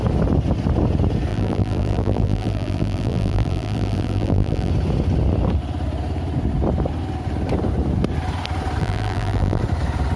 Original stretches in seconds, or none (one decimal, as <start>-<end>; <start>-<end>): 0.0-1.3; 4.7-8.8; 9.6-10.2